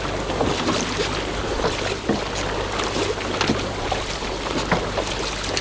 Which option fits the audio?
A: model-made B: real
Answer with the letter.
B